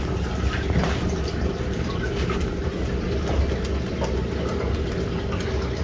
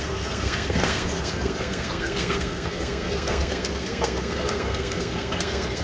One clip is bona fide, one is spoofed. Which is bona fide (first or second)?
first